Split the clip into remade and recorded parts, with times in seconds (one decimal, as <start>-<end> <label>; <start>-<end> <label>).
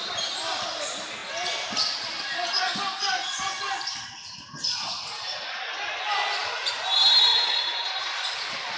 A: 0.0-7.3 recorded; 7.3-7.9 remade; 7.9-8.8 recorded